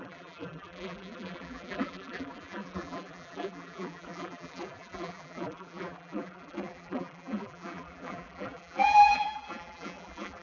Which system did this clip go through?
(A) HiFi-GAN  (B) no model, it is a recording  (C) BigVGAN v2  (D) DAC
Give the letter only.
C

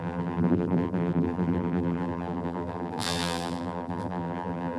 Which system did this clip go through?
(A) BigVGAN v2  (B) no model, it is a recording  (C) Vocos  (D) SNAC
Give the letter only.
A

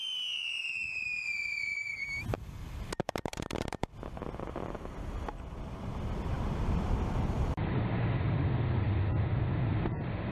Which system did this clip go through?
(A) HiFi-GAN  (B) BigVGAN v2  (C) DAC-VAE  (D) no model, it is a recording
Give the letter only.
D